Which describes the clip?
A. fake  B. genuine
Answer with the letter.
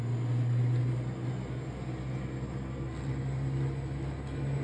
B